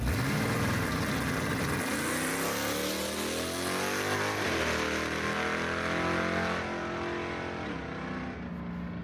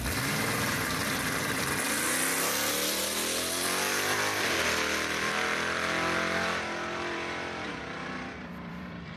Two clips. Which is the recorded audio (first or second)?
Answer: first